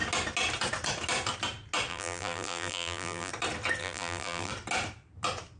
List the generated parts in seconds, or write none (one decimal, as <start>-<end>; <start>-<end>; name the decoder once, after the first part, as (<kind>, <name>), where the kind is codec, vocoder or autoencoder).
1.9-3.3 (vocoder, BigVGAN v2); 3.8-4.5

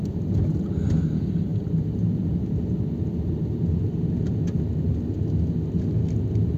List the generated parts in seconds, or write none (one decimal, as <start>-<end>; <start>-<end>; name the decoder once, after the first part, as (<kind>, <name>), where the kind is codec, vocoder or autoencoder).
none

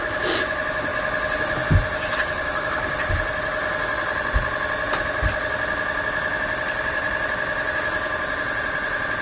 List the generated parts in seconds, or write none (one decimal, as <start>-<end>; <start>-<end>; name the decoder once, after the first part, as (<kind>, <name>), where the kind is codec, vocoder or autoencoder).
0.0-0.9 (vocoder, BigVGAN v2); 1.7-3.6; 6.6-9.2

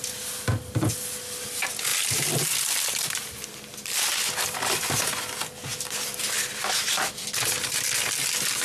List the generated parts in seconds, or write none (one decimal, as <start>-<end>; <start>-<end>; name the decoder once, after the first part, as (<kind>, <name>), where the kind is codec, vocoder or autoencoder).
5.7-7.1 (vocoder, BigVGAN v2)

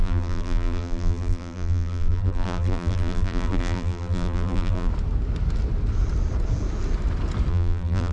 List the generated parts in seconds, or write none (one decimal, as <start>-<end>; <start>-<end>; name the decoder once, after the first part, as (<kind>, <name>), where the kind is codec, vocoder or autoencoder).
0.0-4.9 (vocoder, BigVGAN v2); 7.5-8.1

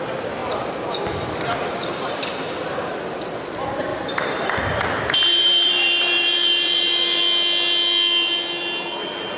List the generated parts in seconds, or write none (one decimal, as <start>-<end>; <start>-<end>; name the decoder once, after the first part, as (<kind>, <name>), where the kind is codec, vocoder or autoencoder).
0.4-1.0 (vocoder, BigVGAN v2); 3.9-7.2